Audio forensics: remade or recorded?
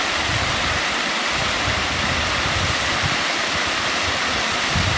recorded